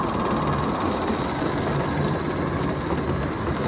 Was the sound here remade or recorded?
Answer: recorded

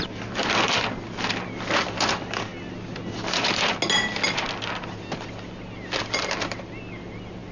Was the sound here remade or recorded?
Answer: recorded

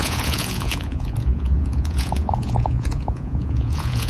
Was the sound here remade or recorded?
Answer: remade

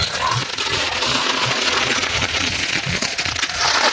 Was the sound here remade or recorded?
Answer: remade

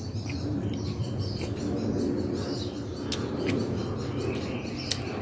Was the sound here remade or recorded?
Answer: recorded